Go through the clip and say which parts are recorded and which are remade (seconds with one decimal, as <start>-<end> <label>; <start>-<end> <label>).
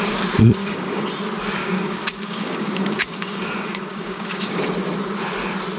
0.0-0.6 recorded; 0.6-1.1 remade; 1.1-1.6 recorded; 1.6-4.6 remade; 4.6-5.8 recorded